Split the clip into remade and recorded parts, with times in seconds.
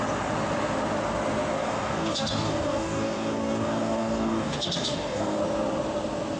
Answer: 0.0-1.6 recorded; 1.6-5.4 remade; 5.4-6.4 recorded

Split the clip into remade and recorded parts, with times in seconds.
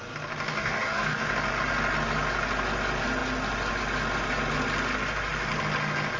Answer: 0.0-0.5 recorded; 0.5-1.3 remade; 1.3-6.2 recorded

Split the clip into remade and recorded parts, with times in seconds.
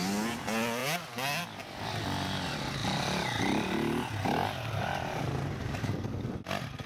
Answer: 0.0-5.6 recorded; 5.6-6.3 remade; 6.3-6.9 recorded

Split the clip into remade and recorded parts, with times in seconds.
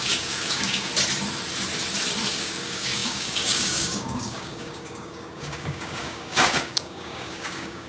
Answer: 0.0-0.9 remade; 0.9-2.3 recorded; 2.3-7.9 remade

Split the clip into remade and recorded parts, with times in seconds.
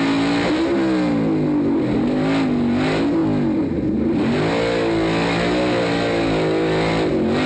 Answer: 0.0-7.5 recorded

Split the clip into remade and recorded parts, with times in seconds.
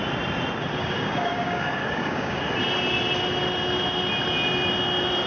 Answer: 0.0-0.8 recorded; 0.8-2.4 remade; 2.4-5.3 recorded